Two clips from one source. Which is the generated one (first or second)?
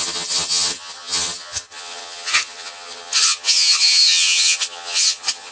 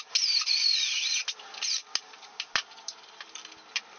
first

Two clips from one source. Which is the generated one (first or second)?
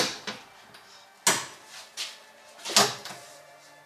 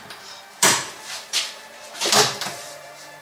second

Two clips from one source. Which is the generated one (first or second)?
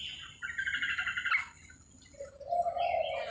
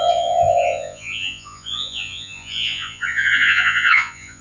second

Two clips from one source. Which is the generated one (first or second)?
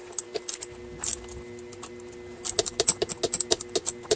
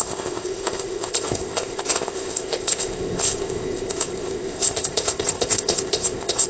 second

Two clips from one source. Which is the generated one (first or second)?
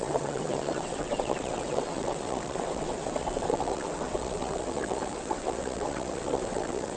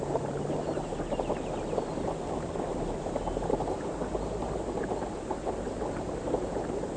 first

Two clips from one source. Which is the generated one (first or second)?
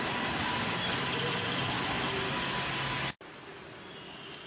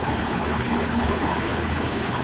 second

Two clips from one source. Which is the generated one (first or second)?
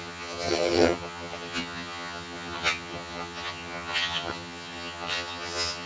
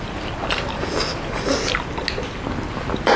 first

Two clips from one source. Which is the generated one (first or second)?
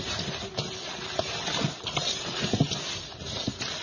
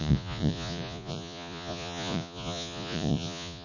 second